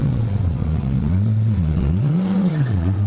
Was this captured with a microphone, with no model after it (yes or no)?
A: no